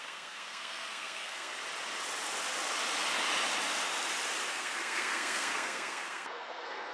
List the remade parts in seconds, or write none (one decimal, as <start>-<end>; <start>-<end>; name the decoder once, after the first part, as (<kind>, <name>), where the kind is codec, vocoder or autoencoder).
0.0-1.5 (codec, SNAC); 4.5-6.9